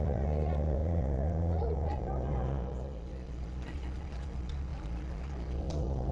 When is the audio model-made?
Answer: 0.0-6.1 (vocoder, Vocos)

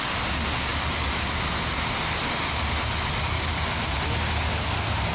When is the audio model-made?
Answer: none

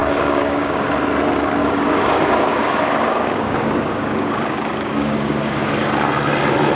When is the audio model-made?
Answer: 0.0-0.9 (codec, DAC); 1.6-5.7

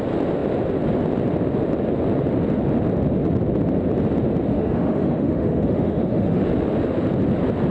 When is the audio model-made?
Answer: 4.5-6.4 (autoencoder, DAC-VAE)

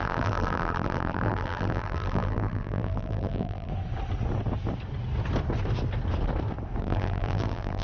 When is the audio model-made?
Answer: 0.0-3.7 (vocoder, BigVGAN v2); 6.8-7.8

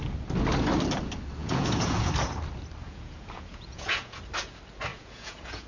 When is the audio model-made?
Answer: 1.4-2.1 (vocoder, Vocos); 2.8-4.2; 4.9-5.7

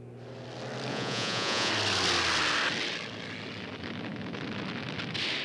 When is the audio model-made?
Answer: 0.9-1.7 (vocoder, Vocos)

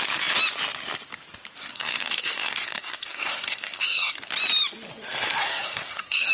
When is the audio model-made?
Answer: 1.6-4.2 (codec, SNAC); 5.4-6.3